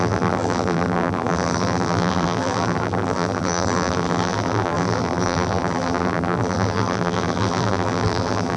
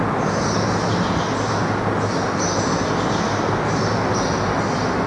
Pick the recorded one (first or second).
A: second